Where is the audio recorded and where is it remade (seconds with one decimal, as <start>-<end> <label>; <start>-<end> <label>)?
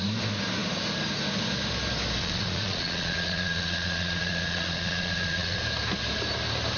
0.0-2.2 recorded; 2.2-5.6 remade; 5.6-6.8 recorded